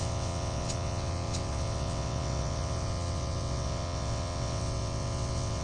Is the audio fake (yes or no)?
yes